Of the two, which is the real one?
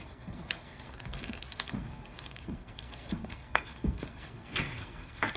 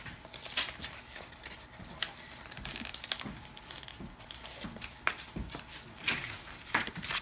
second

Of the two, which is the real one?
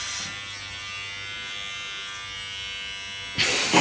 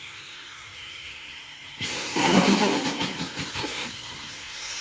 first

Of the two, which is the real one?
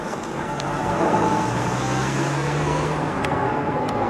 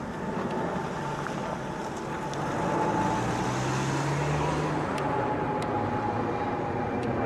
second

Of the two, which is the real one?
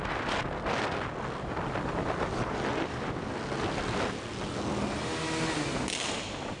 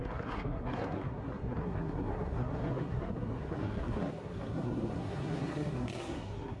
first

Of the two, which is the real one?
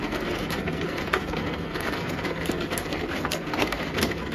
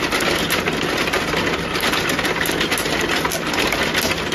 second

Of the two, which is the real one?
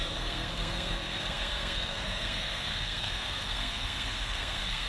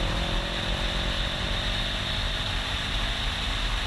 second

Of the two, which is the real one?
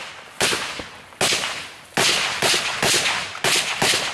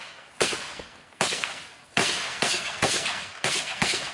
first